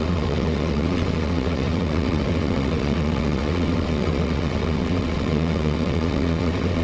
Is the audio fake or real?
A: fake